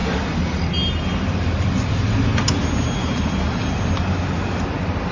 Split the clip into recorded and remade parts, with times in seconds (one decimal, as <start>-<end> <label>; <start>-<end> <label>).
0.0-3.0 recorded; 3.0-3.9 remade; 3.9-5.1 recorded

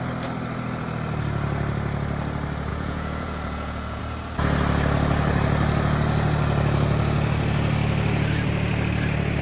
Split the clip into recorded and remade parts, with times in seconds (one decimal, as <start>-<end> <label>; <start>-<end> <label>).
0.0-2.7 recorded; 2.7-4.0 remade; 4.0-9.4 recorded

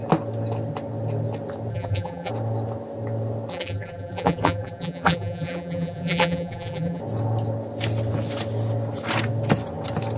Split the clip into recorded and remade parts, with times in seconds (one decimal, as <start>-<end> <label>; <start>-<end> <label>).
0.0-1.7 recorded; 1.7-2.3 remade; 2.3-3.5 recorded; 3.5-7.0 remade; 7.0-10.2 recorded

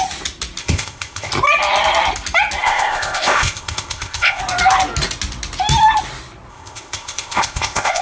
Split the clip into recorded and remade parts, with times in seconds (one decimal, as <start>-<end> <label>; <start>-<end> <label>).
0.0-0.6 recorded; 0.6-1.3 remade; 1.3-2.6 recorded; 2.6-4.4 remade; 4.4-6.5 recorded; 6.5-8.0 remade

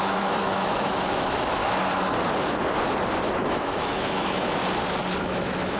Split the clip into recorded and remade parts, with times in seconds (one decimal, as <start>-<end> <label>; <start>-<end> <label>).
0.0-1.6 remade; 1.6-3.5 recorded; 3.5-4.6 remade; 4.6-5.2 recorded; 5.2-5.8 remade

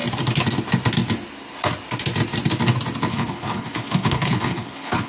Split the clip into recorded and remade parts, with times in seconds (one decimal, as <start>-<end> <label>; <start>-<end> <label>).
0.0-3.1 recorded; 3.1-5.1 remade